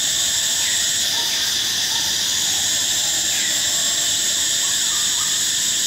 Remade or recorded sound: recorded